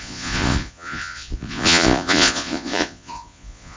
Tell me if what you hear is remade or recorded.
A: remade